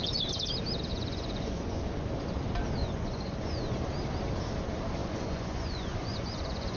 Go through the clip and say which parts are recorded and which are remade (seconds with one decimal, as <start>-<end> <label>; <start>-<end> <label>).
0.0-0.9 recorded; 0.9-2.1 remade; 2.1-2.8 recorded; 2.8-3.8 remade; 3.8-5.0 recorded; 5.0-6.8 remade